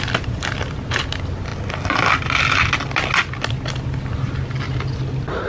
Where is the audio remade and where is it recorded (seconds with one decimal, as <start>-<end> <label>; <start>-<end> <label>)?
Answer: 0.0-5.5 recorded